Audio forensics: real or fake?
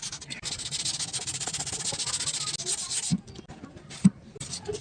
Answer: real